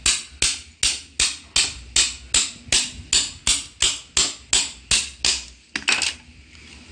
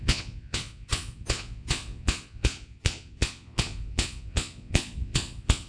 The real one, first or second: first